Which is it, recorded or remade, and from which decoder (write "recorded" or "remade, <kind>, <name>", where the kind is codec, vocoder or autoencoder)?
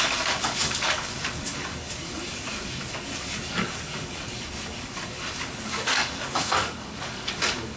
remade, codec, DAC